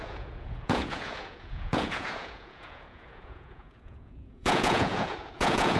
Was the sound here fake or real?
fake